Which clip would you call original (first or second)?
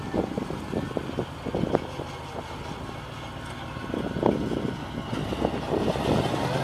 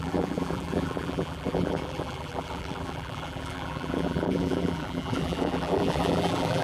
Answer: first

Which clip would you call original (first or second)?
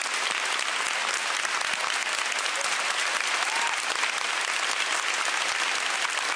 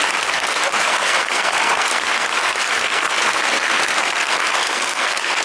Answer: first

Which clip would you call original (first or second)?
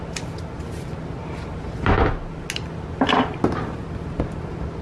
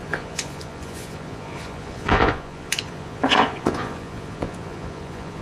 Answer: first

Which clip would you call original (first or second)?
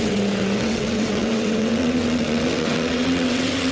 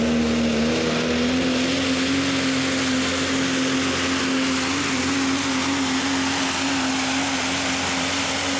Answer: second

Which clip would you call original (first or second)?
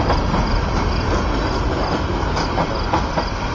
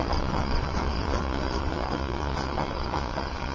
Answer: first